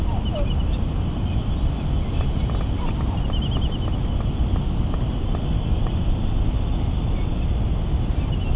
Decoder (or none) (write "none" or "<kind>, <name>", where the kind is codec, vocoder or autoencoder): none